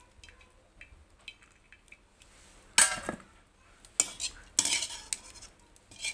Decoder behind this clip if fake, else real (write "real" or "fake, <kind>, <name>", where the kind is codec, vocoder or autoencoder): real